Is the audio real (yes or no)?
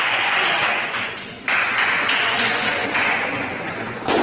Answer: no